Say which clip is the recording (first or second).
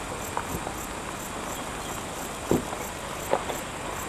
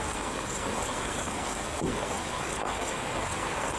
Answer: first